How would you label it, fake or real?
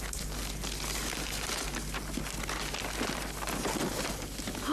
real